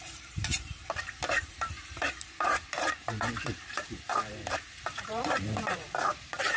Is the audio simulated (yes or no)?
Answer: yes